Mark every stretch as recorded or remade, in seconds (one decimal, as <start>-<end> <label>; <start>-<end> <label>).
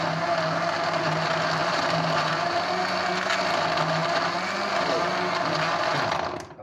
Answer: 0.0-1.6 recorded; 1.6-2.3 remade; 2.3-6.6 recorded